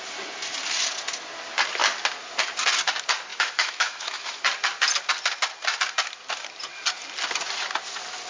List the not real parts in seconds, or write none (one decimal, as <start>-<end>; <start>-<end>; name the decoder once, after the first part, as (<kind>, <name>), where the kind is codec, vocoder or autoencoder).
3.3-4.4 (autoencoder, DAC-VAE)